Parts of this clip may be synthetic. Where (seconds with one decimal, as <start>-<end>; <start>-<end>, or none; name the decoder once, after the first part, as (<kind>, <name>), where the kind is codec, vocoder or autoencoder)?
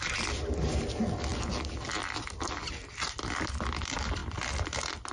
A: none